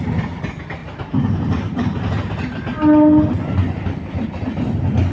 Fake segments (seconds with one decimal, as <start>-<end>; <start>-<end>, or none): 0.8-2.0